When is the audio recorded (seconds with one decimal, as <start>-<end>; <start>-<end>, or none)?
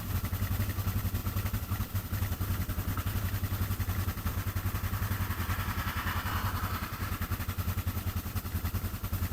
0.0-9.3